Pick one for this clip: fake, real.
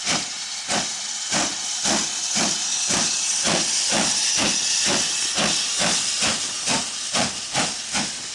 real